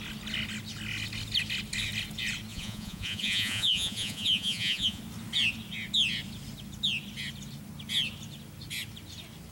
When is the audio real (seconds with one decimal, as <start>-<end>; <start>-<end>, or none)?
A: 0.0-2.5; 5.0-9.5